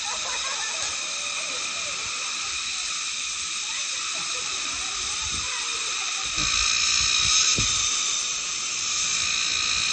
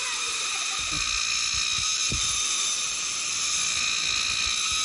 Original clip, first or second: second